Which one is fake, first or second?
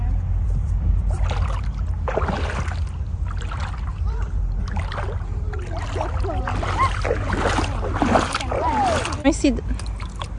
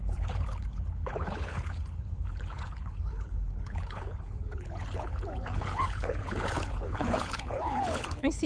second